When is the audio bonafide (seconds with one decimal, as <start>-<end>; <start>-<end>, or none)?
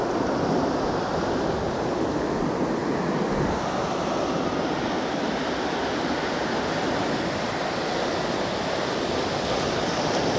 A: 0.0-10.4